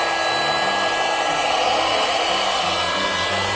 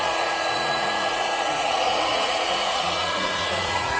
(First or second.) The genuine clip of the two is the first